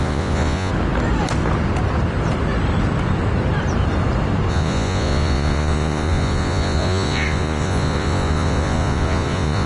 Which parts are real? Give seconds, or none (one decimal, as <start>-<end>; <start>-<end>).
0.7-4.5